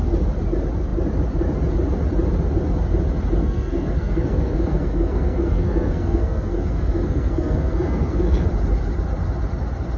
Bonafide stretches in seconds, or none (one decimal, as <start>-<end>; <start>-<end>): 0.0-3.4; 8.5-10.0